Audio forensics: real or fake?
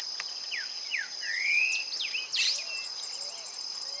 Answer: real